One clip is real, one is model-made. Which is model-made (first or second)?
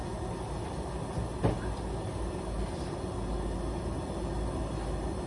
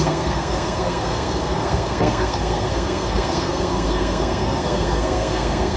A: second